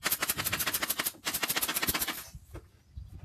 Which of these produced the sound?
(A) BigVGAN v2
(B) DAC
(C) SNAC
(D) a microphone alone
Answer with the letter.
D